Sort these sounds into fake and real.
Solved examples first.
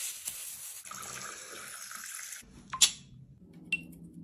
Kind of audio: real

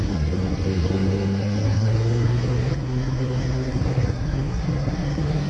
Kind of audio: fake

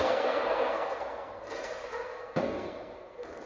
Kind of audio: fake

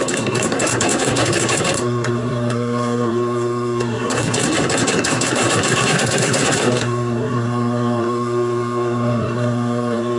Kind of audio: fake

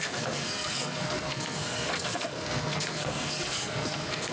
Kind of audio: fake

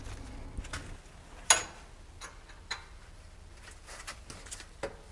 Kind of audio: real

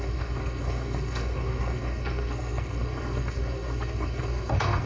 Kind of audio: fake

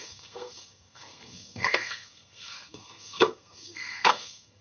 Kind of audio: fake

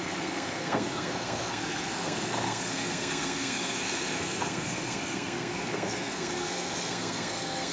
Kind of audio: fake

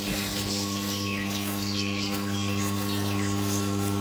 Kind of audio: fake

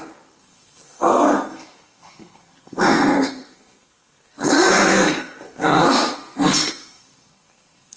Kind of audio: fake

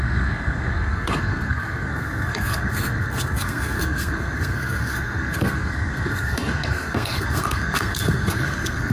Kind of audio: fake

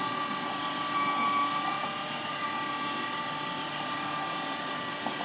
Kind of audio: real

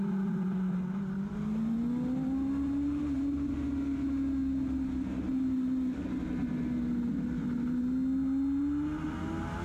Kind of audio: real